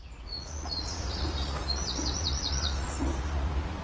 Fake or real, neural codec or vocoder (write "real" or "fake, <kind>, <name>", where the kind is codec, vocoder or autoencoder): fake, vocoder, Vocos